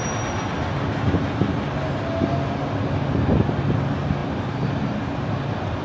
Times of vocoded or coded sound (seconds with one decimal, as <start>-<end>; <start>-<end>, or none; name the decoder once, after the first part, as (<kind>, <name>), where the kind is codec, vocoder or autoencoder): none